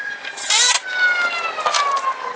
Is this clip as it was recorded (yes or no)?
yes